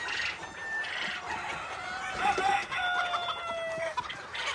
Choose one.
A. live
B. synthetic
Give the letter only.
A